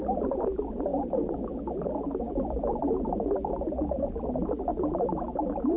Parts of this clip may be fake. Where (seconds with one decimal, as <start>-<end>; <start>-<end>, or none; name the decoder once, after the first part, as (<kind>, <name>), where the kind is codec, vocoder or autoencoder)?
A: none